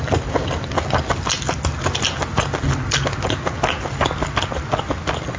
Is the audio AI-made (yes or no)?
no